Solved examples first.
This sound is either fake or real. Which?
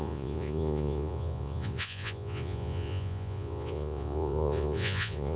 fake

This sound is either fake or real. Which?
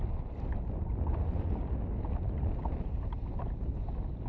real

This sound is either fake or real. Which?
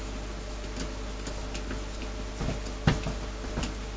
real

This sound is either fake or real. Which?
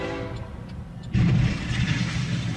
real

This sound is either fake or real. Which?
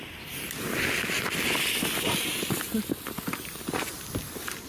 real